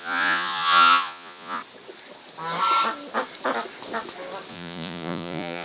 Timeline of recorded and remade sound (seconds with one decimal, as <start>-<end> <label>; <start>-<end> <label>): 0.0-1.6 remade; 1.6-4.5 recorded; 4.5-5.6 remade